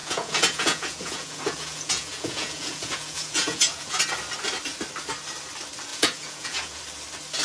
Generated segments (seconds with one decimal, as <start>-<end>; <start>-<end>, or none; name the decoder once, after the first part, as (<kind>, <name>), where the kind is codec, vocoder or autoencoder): 0.0-4.0 (vocoder, Vocos); 5.9-6.8